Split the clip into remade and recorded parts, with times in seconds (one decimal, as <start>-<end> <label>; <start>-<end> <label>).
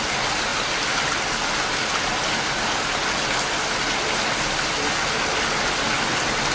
0.0-6.5 recorded